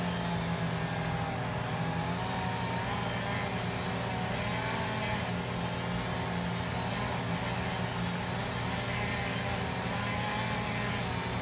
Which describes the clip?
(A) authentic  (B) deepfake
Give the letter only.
A